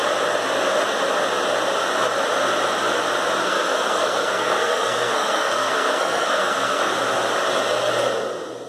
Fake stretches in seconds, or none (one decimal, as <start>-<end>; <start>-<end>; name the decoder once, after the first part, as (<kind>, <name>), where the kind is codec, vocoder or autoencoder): 3.4-6.9 (codec, SNAC)